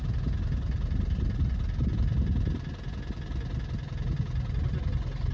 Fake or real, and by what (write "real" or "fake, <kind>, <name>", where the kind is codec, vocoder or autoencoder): real